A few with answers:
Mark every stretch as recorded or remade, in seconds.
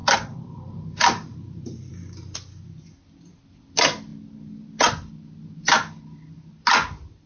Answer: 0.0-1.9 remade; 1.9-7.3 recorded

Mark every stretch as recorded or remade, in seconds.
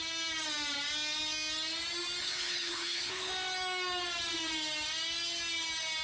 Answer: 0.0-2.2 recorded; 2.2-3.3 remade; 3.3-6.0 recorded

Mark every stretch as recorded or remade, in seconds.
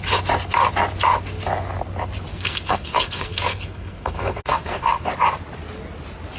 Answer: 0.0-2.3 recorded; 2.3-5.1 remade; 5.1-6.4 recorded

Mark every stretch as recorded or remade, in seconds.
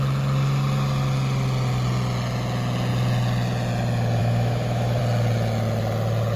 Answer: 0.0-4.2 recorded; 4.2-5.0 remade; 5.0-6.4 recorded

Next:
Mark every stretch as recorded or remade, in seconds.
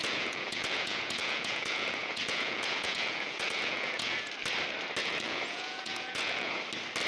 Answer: 0.0-4.3 remade; 4.3-5.0 recorded; 5.0-6.6 remade; 6.6-7.1 recorded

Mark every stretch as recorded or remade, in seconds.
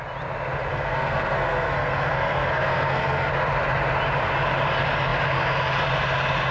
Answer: 0.0-0.7 recorded; 0.7-3.3 remade; 3.3-6.5 recorded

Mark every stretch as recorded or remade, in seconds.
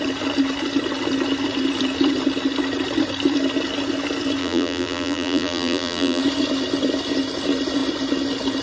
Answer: 0.0-4.4 recorded; 4.4-6.2 remade; 6.2-8.6 recorded